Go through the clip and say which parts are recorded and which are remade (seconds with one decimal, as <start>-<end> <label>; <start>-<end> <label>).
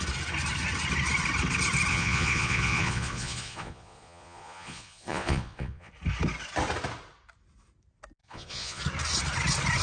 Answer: 0.0-1.9 recorded; 1.9-5.9 remade; 5.9-8.2 recorded; 8.2-8.8 remade; 8.8-9.8 recorded